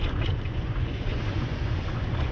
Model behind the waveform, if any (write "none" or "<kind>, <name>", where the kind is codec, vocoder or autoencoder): vocoder, Vocos